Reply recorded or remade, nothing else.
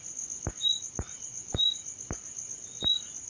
recorded